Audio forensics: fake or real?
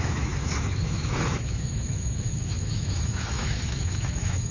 fake